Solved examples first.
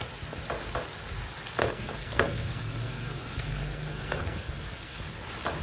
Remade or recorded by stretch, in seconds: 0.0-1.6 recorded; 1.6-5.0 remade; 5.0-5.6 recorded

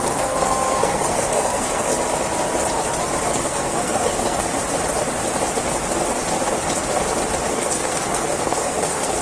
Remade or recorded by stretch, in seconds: 0.0-1.9 remade; 1.9-3.3 recorded; 3.3-4.5 remade; 4.5-7.5 recorded; 7.5-9.2 remade

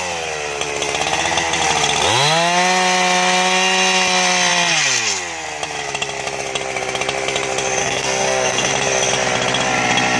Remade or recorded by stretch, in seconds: 0.0-7.8 recorded; 7.8-8.7 remade; 8.7-10.2 recorded